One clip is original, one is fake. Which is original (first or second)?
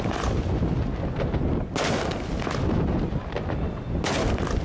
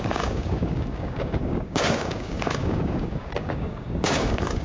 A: first